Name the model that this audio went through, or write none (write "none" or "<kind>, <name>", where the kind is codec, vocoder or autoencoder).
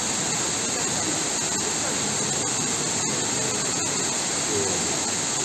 none